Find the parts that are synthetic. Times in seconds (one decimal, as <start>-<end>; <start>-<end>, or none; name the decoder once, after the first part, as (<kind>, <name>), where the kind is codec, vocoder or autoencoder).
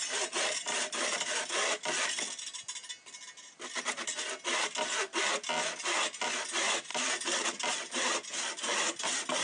none